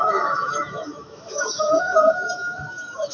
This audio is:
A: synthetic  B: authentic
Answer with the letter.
A